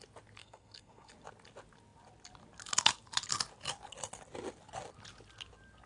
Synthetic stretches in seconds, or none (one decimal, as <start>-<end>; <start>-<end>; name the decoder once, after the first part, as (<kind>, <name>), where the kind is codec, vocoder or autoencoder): 0.4-1.1 (codec, SNAC)